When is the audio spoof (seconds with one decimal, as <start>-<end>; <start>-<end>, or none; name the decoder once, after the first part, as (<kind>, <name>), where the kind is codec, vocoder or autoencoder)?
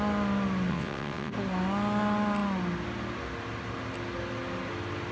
0.7-1.3 (vocoder, WaveNeXt)